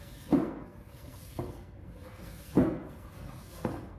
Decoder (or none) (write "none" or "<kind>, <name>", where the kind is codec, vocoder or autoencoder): codec, SNAC